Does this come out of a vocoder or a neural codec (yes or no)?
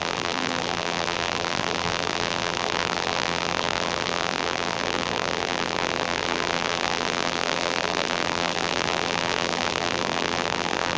yes